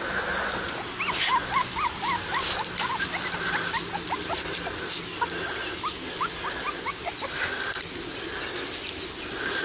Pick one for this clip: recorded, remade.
recorded